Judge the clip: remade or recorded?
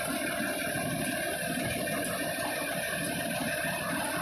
recorded